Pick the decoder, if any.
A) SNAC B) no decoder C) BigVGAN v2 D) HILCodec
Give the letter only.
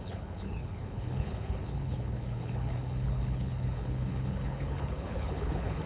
D